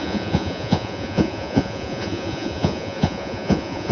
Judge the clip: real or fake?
fake